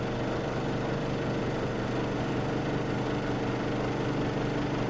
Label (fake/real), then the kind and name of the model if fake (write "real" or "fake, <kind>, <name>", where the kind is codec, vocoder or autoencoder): real